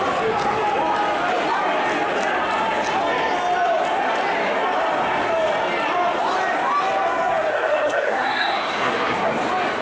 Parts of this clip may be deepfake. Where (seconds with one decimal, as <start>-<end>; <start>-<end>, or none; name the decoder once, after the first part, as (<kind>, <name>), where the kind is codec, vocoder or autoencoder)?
7.5-9.3 (codec, SNAC)